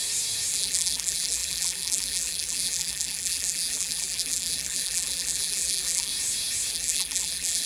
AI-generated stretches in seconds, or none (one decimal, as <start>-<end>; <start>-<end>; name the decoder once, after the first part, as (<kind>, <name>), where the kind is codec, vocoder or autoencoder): 0.5-6.1 (vocoder, BigVGAN v2); 6.7-7.7